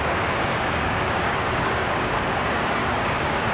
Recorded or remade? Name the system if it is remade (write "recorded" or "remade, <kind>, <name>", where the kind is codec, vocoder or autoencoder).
remade, codec, DAC